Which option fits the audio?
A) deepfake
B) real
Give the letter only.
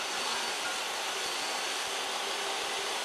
B